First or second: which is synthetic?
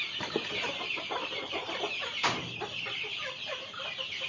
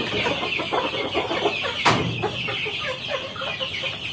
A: first